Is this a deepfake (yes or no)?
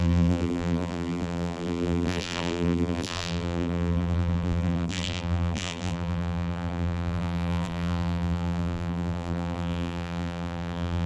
yes